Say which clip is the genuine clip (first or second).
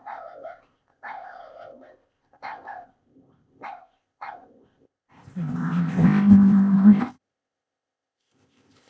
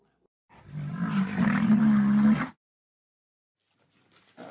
second